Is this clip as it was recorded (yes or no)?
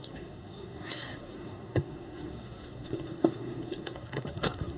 no